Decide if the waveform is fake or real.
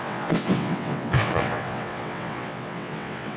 fake